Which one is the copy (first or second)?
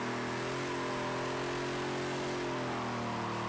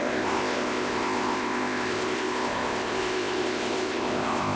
second